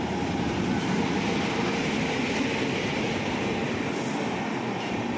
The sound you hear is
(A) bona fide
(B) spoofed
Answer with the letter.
A